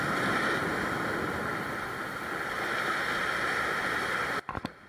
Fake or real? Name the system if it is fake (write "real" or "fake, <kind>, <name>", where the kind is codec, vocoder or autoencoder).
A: real